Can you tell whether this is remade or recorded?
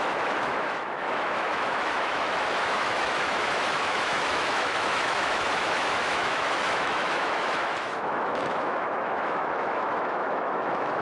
remade